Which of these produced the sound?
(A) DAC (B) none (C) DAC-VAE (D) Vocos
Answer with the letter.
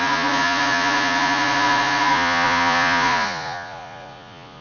D